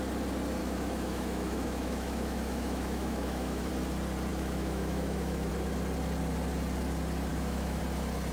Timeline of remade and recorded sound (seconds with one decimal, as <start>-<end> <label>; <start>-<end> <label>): 0.0-0.6 recorded; 0.6-3.7 remade; 3.7-4.3 recorded; 4.3-5.5 remade; 5.5-7.3 recorded; 7.3-7.8 remade; 7.8-8.3 recorded